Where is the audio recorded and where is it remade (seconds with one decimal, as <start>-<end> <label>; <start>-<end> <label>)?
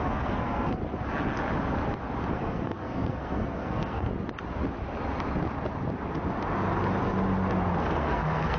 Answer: 0.0-0.8 remade; 0.8-2.3 recorded; 2.3-4.1 remade; 4.1-7.8 recorded; 7.8-8.6 remade